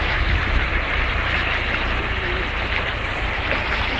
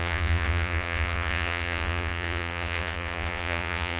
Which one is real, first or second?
first